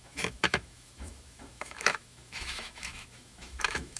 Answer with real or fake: fake